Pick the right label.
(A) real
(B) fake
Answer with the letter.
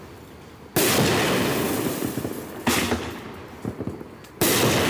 A